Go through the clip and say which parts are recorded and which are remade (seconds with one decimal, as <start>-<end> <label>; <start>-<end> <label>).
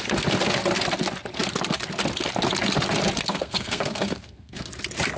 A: 0.0-3.3 recorded; 3.3-4.7 remade; 4.7-5.2 recorded